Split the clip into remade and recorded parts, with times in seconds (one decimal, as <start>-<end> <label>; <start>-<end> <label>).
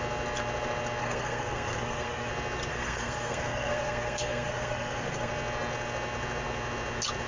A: 0.0-1.0 recorded; 1.0-2.3 remade; 2.3-2.7 recorded; 2.7-5.3 remade; 5.3-7.3 recorded